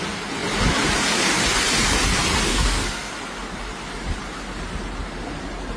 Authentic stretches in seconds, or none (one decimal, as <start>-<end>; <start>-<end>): 0.0-2.5; 3.1-5.8